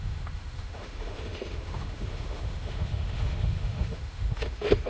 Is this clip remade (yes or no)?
yes